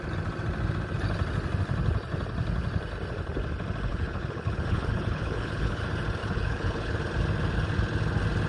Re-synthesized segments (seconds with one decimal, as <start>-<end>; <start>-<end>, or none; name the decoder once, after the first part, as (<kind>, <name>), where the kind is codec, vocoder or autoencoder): 3.9-5.8 (codec, HILCodec); 6.2-7.0